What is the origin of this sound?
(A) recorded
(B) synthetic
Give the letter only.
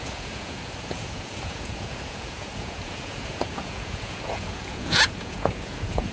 B